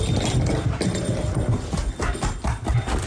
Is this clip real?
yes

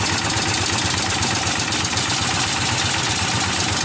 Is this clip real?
yes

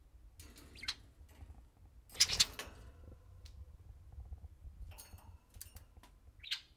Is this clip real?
yes